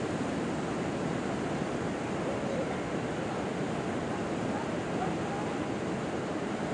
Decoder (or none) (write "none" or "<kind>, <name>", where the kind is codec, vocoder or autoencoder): none